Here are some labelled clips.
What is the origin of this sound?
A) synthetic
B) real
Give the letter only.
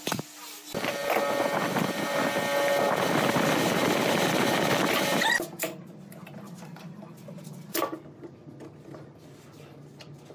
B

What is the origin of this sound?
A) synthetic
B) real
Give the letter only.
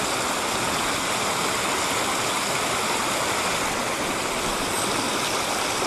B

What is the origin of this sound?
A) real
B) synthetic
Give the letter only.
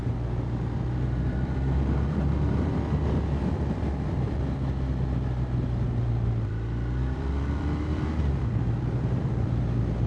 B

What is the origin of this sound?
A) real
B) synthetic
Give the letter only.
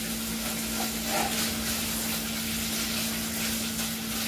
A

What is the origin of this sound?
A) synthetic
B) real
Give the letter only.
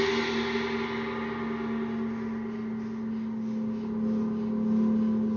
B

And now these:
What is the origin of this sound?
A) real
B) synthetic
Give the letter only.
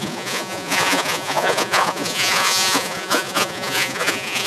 B